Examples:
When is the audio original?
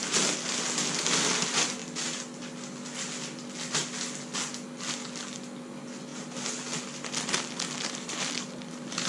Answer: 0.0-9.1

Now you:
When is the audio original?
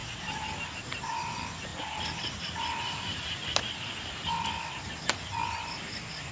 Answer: 0.0-1.7; 5.5-6.3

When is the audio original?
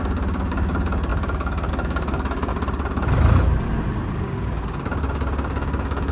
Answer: 2.5-4.1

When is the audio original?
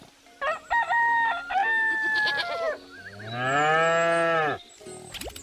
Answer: 0.0-5.4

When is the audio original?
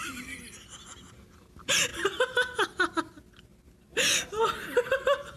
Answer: 0.0-5.4